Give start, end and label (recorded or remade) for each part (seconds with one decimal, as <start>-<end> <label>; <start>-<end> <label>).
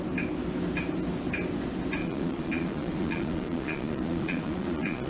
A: 0.0-2.0 recorded; 2.0-5.1 remade